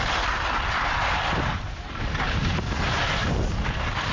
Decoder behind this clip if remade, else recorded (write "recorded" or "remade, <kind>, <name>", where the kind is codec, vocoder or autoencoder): recorded